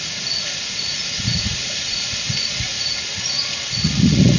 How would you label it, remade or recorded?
remade